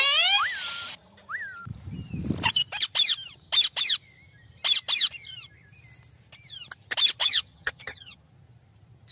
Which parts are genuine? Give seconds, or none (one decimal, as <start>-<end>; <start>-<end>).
0.0-7.2; 8.3-9.1